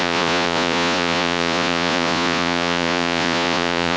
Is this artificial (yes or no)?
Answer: yes